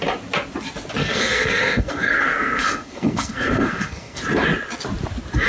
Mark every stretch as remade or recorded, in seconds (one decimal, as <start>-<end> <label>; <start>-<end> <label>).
0.0-1.0 recorded; 1.0-4.2 remade; 4.2-5.5 recorded